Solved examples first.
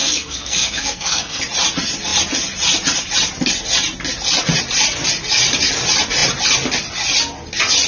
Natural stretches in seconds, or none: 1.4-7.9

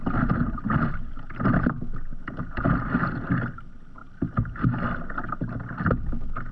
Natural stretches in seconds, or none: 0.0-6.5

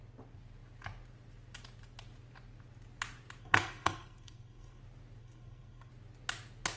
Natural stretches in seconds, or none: 0.0-3.4; 4.8-5.2; 5.9-6.8